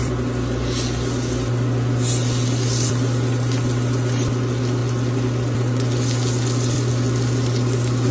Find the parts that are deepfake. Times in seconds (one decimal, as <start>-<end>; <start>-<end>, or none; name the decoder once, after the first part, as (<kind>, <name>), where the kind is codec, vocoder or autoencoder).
none